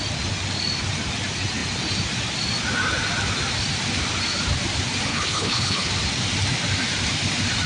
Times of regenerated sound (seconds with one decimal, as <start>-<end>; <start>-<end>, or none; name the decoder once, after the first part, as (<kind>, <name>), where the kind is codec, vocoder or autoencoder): 5.1-5.9 (codec, HILCodec)